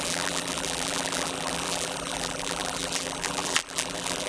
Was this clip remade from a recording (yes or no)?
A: yes